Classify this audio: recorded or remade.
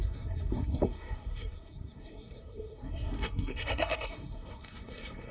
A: remade